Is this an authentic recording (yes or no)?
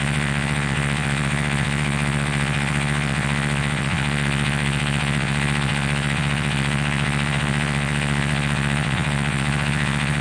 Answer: no